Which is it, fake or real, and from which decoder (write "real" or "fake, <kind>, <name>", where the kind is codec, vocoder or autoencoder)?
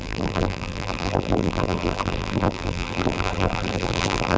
fake, vocoder, BigVGAN v2